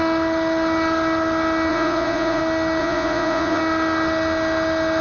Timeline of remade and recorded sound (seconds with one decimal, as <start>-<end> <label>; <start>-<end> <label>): 0.0-1.7 recorded; 1.7-2.4 remade; 2.4-2.8 recorded; 2.8-3.6 remade; 3.6-5.0 recorded